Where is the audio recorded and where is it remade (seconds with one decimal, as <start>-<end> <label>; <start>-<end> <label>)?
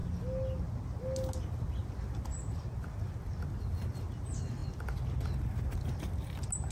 0.0-6.7 recorded